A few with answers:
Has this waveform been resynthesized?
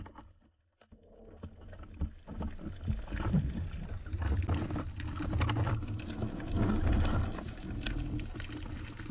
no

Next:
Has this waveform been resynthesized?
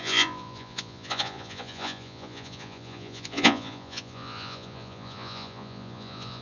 yes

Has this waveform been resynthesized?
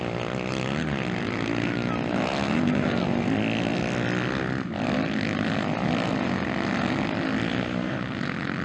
no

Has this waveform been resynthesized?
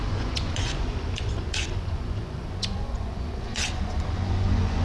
yes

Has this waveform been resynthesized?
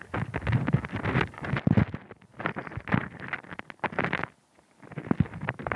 no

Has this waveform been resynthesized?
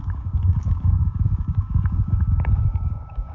yes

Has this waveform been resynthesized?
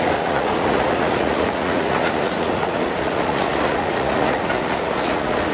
yes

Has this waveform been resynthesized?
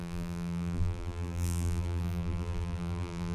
yes